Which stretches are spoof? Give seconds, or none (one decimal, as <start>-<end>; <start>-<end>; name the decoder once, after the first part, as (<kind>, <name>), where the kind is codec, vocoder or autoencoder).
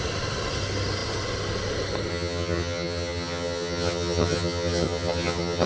2.1-5.7 (vocoder, HiFi-GAN)